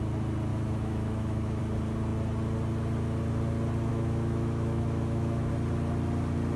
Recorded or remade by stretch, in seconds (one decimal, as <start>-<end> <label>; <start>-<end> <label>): 0.0-0.5 recorded; 0.5-1.6 remade; 1.6-3.9 recorded; 3.9-5.5 remade; 5.5-6.6 recorded

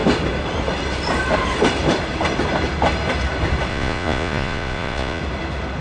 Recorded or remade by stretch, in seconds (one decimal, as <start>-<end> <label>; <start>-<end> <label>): 0.0-3.7 recorded; 3.7-5.2 remade; 5.2-5.8 recorded

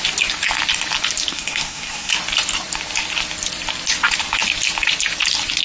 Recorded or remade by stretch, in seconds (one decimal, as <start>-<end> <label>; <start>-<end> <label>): 0.0-1.3 recorded; 1.3-2.1 remade; 2.1-5.6 recorded

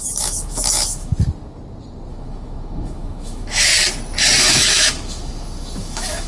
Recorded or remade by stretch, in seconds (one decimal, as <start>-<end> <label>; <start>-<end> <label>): 0.0-1.1 remade; 1.1-2.1 recorded; 2.1-3.7 remade; 3.7-4.4 recorded; 4.4-6.3 remade

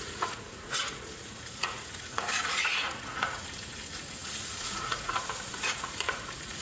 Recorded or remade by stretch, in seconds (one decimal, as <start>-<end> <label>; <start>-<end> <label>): 0.0-6.6 remade

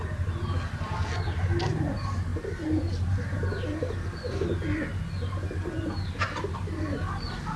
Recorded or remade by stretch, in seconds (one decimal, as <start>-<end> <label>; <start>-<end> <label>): 0.0-7.6 recorded